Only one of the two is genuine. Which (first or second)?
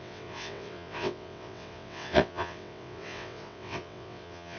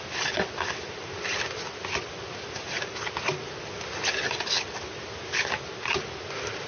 second